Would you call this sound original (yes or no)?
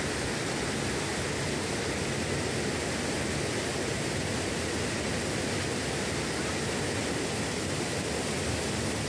yes